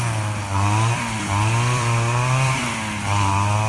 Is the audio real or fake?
fake